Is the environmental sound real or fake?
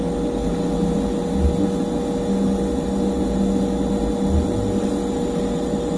real